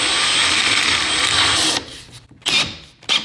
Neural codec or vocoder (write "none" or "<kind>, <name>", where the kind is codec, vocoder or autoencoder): none